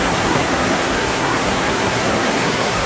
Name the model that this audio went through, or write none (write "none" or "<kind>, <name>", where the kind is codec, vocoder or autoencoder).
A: codec, SNAC